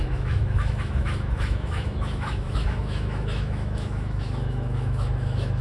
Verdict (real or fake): fake